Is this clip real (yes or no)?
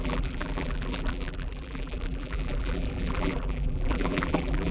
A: no